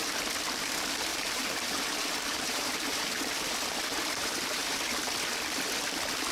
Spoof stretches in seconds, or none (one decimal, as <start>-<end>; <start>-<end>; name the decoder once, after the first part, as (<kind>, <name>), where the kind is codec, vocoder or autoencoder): 1.1-4.8 (vocoder, BigVGAN v2)